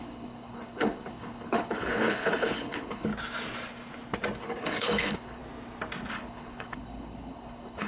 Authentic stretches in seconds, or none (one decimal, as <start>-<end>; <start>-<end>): 3.1-4.4; 5.4-6.1